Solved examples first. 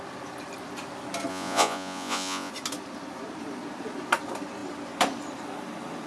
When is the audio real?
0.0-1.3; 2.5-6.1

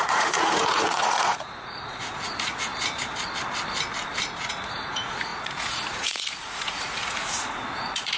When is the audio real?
2.7-4.4

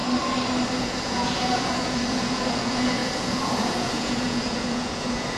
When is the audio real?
0.0-0.8